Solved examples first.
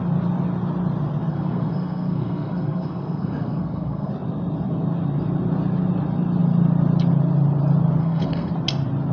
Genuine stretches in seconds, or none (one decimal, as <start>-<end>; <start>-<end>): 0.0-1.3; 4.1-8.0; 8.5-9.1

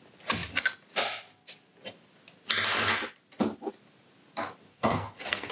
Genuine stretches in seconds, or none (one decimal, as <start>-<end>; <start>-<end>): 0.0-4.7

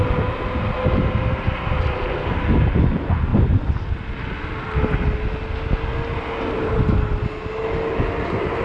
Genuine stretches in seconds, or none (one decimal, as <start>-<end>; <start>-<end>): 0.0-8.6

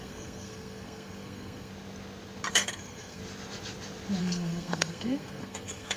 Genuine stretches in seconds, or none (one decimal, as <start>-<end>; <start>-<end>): 1.7-2.5; 3.2-4.2

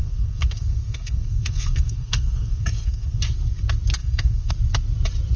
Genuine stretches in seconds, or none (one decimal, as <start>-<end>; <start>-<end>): 3.2-4.0; 4.5-5.4